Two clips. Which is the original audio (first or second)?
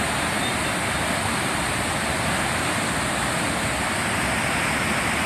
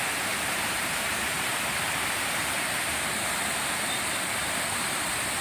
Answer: first